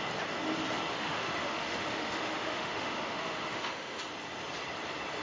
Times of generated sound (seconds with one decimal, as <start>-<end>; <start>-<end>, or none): 0.9-4.0